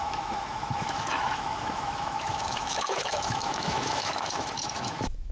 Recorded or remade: remade